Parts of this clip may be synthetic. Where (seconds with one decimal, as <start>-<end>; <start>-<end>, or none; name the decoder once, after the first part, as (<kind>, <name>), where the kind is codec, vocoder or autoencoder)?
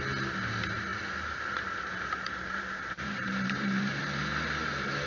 0.9-4.0 (vocoder, BigVGAN v2)